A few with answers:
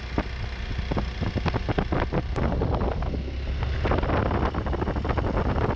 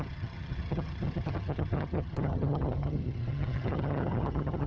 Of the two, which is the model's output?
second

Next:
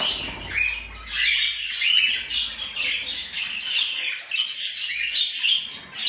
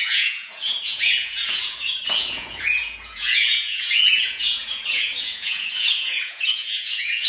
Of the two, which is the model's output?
second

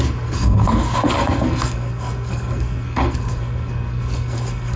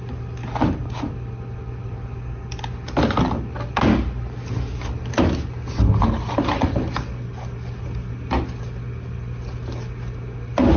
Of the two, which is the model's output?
first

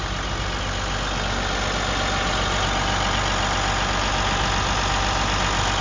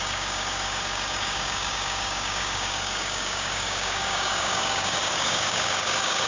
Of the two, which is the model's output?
second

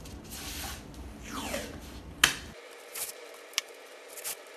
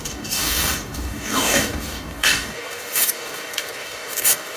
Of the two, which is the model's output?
second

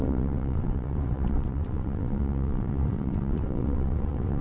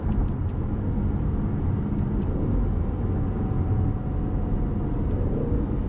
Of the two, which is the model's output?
first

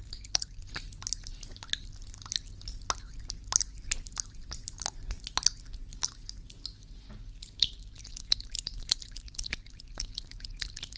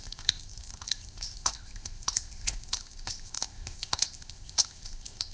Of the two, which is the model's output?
second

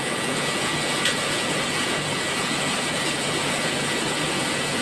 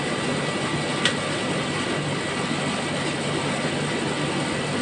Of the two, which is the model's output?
first